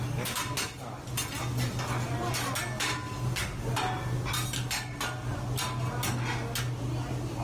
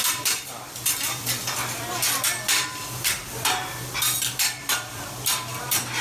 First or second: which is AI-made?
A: second